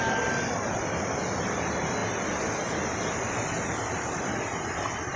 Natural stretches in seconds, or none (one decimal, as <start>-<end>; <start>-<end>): 0.0-5.2